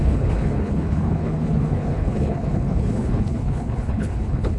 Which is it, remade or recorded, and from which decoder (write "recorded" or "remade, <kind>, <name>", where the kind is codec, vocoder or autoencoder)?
remade, codec, HILCodec